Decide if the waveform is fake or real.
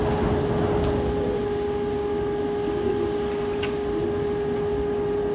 real